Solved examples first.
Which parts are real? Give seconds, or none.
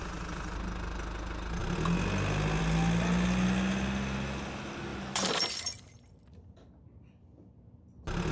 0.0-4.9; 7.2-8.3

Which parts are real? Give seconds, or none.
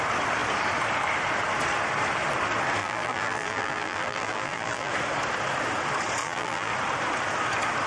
0.0-2.8; 4.9-6.2; 6.7-7.9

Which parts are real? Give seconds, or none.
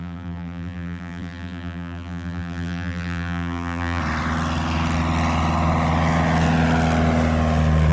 4.0-7.9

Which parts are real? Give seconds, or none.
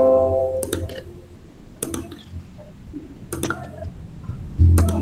0.0-0.4; 3.4-5.0